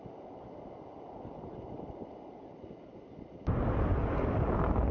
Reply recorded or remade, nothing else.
recorded